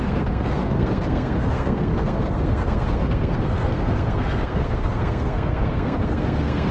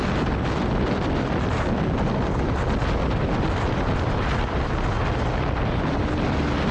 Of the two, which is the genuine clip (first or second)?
second